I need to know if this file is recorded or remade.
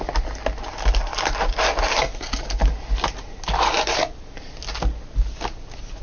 recorded